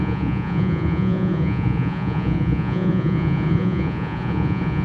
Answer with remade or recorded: remade